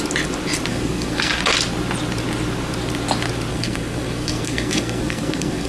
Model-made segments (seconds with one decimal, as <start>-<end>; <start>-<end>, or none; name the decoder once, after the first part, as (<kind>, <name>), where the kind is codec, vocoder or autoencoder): 0.7-1.3 (codec, SNAC); 3.5-5.7